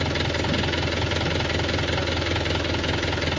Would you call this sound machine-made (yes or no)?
no